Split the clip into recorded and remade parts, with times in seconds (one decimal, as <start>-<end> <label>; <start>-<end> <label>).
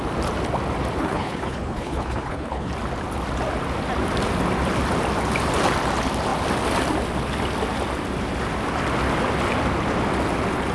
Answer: 0.0-1.0 recorded; 1.0-2.7 remade; 2.7-10.7 recorded